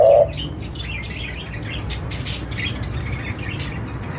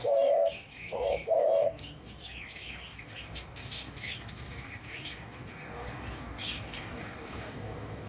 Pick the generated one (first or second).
second